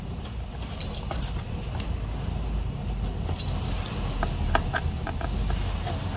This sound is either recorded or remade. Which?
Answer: recorded